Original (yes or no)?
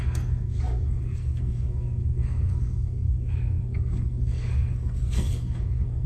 no